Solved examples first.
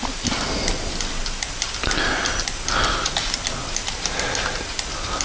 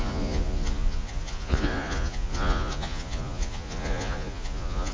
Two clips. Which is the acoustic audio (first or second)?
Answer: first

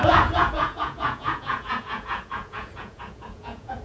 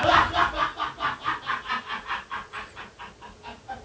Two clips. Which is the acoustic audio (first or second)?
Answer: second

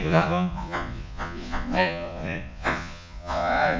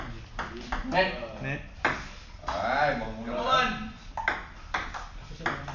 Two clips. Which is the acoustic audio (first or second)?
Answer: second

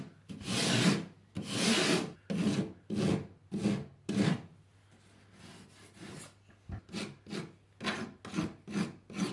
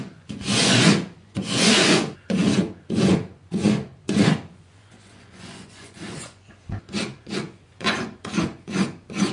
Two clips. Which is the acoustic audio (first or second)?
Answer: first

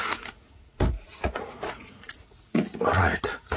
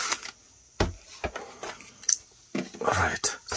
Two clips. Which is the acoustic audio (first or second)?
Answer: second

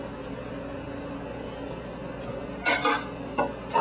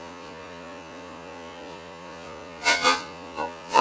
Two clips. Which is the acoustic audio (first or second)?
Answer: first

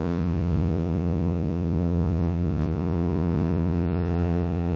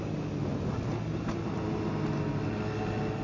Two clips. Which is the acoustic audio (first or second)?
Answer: second